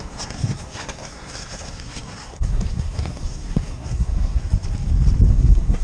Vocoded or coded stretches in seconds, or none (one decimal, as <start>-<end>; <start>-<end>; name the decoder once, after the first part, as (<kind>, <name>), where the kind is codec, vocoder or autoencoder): 0.0-4.4 (codec, SNAC); 5.3-5.8